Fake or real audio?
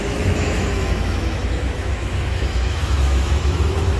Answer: fake